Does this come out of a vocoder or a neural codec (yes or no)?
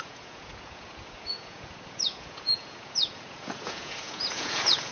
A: yes